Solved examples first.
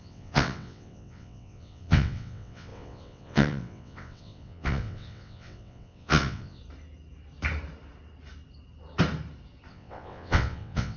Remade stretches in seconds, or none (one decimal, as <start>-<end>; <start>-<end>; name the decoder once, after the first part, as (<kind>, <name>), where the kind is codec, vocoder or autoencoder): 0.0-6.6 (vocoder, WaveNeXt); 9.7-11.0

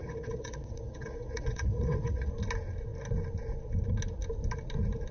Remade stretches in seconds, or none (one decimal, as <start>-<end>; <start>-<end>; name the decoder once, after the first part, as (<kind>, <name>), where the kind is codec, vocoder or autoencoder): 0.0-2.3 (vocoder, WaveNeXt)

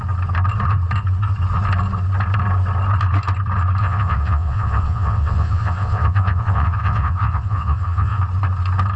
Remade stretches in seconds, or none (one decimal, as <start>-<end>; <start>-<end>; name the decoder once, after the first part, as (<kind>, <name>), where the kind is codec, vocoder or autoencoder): 3.8-8.2 (vocoder, WaveNeXt)